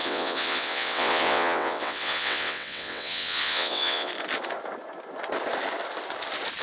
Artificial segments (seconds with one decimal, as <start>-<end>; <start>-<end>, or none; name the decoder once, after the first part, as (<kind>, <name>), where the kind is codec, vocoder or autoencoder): 0.0-4.1 (vocoder, WaveNeXt)